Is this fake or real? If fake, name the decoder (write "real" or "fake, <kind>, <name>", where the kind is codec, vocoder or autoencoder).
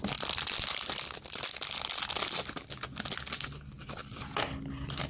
real